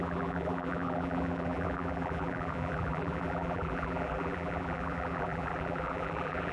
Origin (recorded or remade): remade